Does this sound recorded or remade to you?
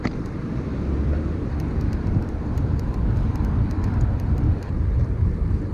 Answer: remade